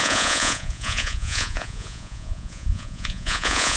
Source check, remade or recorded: remade